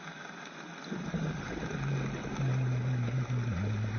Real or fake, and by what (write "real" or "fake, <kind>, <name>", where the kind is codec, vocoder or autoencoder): real